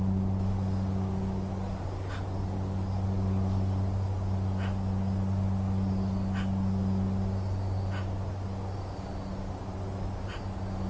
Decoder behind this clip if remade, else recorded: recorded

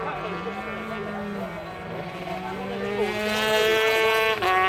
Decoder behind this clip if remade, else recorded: recorded